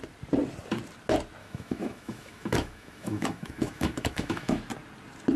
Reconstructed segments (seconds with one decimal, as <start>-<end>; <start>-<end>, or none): 1.4-4.6